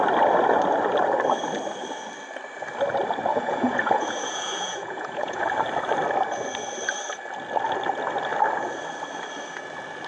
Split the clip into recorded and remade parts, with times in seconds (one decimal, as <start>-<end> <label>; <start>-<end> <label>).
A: 0.0-3.3 recorded; 3.3-5.4 remade; 5.4-10.1 recorded